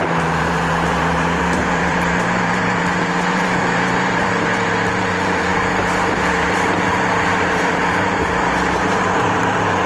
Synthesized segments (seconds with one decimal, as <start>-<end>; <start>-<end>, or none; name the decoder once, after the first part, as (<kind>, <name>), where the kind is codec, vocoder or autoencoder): 0.0-9.9 (vocoder, BigVGAN v2)